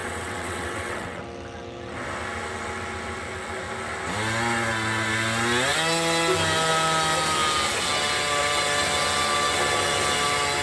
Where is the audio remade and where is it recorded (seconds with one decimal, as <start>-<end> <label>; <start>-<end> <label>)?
0.0-1.2 remade; 1.2-10.6 recorded